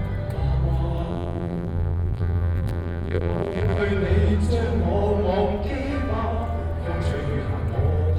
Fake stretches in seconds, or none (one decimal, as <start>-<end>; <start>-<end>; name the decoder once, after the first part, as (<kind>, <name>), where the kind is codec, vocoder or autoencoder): 1.1-3.8 (vocoder, BigVGAN v2)